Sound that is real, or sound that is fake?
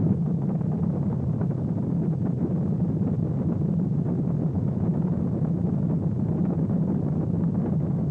real